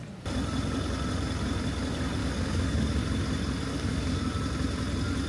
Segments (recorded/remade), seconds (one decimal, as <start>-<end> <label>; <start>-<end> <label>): 0.0-2.2 recorded; 2.2-3.0 remade; 3.0-3.7 recorded; 3.7-4.3 remade; 4.3-5.3 recorded